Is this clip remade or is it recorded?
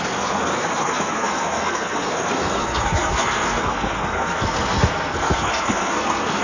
remade